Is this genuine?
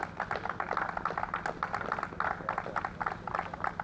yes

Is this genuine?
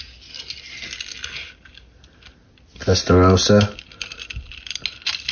yes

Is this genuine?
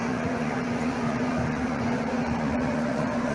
no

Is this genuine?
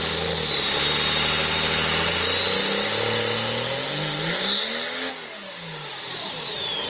yes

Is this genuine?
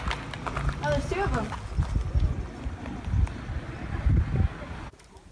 yes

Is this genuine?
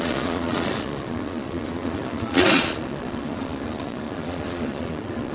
no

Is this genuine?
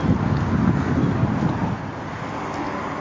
yes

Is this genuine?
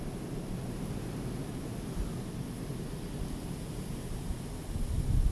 yes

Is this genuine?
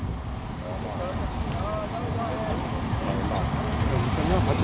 yes